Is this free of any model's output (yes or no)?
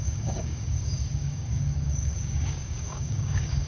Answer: no